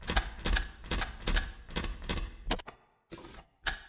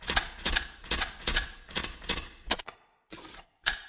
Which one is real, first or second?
first